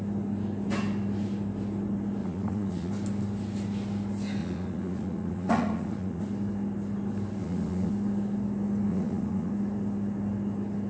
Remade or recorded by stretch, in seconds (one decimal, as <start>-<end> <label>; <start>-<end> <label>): 0.0-2.2 recorded; 2.2-2.9 remade; 2.9-4.4 recorded; 4.4-6.2 remade; 6.2-7.4 recorded; 7.4-7.9 remade; 7.9-8.9 recorded; 8.9-9.5 remade; 9.5-10.9 recorded